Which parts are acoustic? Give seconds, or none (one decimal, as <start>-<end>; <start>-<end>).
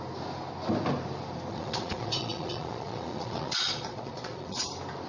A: 0.0-1.5; 4.6-5.1